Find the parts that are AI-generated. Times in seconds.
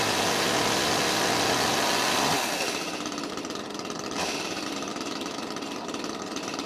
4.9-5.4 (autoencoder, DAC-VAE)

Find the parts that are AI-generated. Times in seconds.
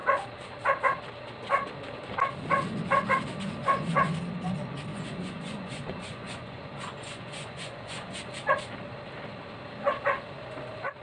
3.6-4.2 (vocoder, Vocos); 4.9-8.2